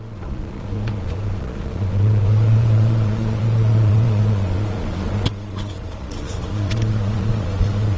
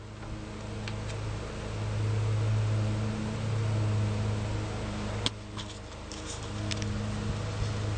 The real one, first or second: second